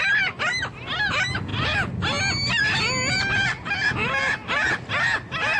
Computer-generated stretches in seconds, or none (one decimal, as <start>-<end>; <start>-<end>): none